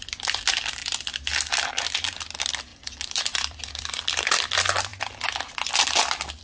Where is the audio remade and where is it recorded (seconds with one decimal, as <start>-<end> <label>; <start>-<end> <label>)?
0.0-2.7 recorded; 2.7-4.3 remade; 4.3-6.4 recorded